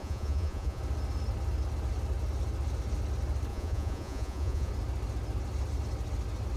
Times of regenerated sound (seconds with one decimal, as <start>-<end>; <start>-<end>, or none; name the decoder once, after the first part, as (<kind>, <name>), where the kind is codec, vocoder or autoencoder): 0.0-0.8 (vocoder, Vocos); 3.5-4.7

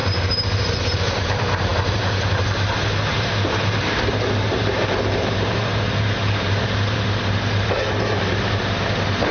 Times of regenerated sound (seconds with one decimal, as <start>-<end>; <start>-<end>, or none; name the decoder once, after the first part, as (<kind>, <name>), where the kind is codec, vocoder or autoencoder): 0.0-9.3 (vocoder, BigVGAN v2)

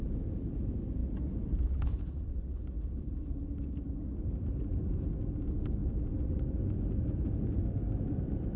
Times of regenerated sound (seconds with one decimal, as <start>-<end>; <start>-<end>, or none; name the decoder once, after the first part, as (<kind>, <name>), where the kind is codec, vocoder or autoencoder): none

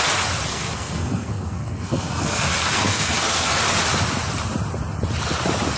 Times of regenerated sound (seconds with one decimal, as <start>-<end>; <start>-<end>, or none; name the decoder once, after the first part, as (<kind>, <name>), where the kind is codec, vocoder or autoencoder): 0.5-3.6 (codec, SNAC)

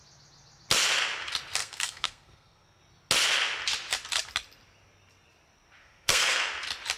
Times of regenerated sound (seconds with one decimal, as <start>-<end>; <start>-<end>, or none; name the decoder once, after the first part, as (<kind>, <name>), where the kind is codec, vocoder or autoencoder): 1.6-2.8 (codec, SNAC); 5.8-6.5